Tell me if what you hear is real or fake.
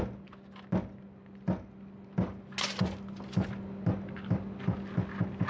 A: real